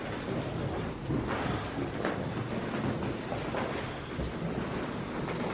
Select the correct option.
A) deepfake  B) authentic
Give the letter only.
B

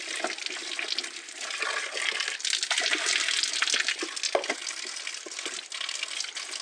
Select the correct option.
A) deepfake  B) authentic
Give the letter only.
B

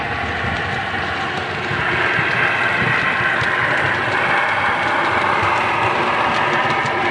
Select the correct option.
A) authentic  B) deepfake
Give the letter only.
A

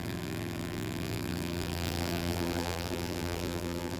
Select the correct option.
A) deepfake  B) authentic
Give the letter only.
A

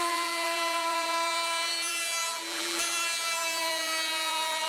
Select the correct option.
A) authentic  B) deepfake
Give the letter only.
B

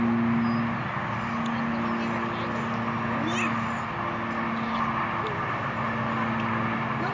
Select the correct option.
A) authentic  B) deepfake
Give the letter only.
A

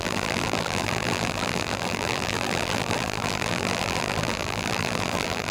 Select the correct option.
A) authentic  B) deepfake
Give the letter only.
B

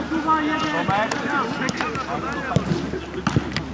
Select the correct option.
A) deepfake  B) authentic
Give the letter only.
B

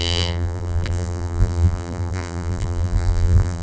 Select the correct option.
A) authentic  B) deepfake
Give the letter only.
B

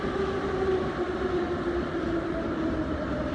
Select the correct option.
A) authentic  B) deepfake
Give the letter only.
B